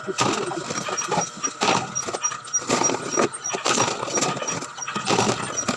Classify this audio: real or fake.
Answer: real